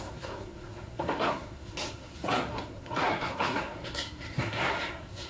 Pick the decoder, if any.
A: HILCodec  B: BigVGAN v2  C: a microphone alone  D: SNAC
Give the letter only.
D